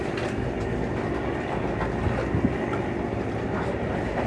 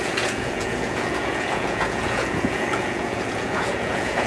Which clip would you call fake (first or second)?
second